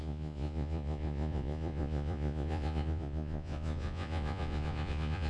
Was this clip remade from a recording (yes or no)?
yes